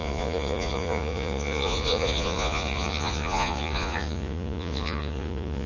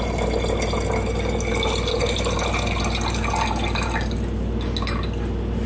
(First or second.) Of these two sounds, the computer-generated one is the first